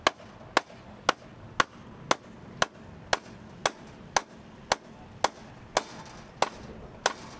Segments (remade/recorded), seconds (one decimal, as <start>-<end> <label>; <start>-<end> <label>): 0.0-7.4 recorded